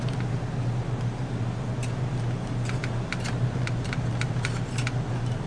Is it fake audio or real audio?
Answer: real